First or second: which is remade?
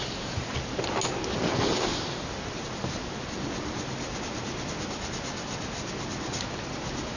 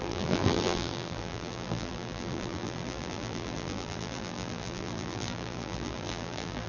second